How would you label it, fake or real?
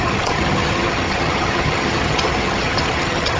fake